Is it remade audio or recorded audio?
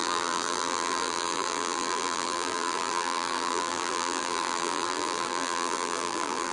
remade